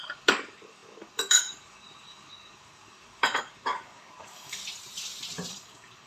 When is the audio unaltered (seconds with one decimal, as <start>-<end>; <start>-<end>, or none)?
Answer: 4.6-5.5